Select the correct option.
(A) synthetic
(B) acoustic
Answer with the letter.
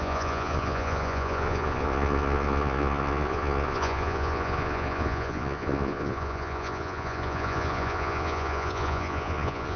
A